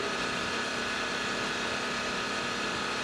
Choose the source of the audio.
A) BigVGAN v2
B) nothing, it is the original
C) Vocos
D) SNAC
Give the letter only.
B